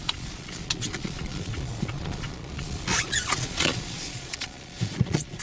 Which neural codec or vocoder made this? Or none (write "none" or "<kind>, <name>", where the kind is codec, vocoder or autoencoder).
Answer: vocoder, Vocos